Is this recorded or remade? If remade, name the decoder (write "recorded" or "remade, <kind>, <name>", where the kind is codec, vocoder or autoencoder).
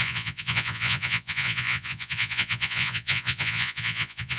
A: remade, vocoder, Vocos